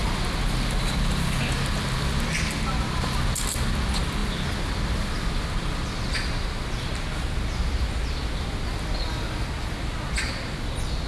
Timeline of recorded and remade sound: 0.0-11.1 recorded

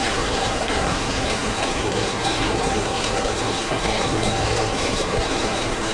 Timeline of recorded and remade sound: 0.0-5.9 remade

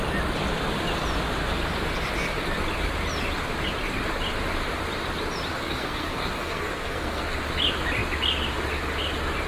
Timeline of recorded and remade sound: 0.0-5.5 recorded; 5.5-7.3 remade; 7.3-9.5 recorded

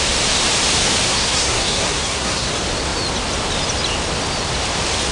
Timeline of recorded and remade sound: 0.0-1.1 recorded; 1.1-2.5 remade; 2.5-5.1 recorded

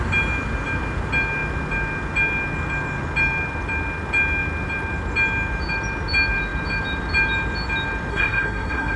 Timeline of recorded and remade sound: 0.0-8.1 recorded; 8.1-9.0 remade

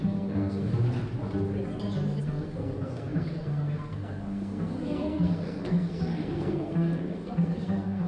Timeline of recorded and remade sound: 0.0-0.7 remade; 0.7-2.2 recorded; 2.2-8.1 remade

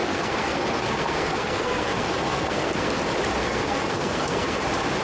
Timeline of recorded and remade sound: 0.0-3.0 remade; 3.0-3.4 recorded; 3.4-4.6 remade; 4.6-5.0 recorded

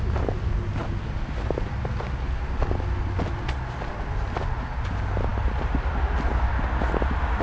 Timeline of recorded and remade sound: 0.0-7.4 recorded